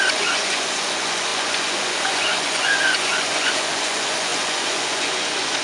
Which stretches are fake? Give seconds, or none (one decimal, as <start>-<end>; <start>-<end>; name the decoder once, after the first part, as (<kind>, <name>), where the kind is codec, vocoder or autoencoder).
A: 0.0-5.6 (vocoder, Vocos)

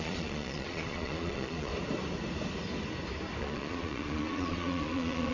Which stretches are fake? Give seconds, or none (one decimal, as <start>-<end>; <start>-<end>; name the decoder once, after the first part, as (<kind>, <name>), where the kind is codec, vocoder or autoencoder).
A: 0.0-1.7 (vocoder, Vocos); 3.4-5.3

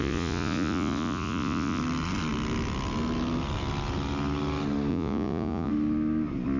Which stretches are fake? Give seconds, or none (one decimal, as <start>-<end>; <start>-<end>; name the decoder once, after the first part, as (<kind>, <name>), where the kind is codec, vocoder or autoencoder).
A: 0.0-1.8 (vocoder, Vocos); 4.9-5.7

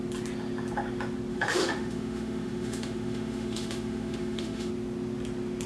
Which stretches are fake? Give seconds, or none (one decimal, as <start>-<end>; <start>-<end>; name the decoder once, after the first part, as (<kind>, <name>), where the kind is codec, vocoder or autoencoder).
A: 1.3-4.7 (autoencoder, DAC-VAE)

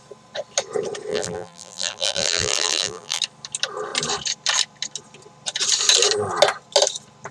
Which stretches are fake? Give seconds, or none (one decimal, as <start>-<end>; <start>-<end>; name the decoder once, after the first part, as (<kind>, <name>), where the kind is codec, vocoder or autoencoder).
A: 1.1-3.2 (vocoder, BigVGAN v2)